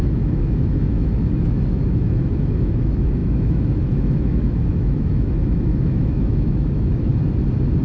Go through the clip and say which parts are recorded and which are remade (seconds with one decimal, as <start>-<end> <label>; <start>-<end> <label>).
0.0-7.1 remade; 7.1-7.8 recorded

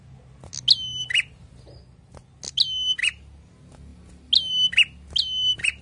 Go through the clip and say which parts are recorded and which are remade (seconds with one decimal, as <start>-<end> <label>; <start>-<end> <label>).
0.0-5.8 recorded

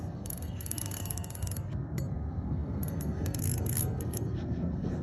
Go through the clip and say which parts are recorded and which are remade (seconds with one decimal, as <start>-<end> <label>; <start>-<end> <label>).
0.0-5.0 remade

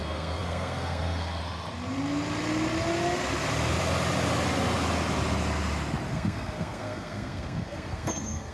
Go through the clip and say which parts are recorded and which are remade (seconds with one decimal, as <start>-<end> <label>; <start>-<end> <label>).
0.0-1.4 remade; 1.4-6.1 recorded; 6.1-8.5 remade

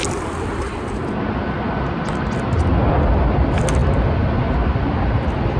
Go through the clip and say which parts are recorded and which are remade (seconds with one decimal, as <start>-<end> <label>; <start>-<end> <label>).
0.0-5.6 recorded

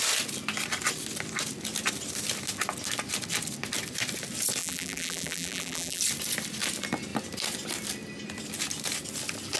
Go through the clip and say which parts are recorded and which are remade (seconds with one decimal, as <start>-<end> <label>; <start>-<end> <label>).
0.0-4.6 recorded; 4.6-6.0 remade; 6.0-9.6 recorded

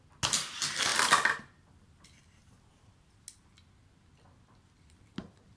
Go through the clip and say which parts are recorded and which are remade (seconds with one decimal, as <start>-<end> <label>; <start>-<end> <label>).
0.0-5.6 recorded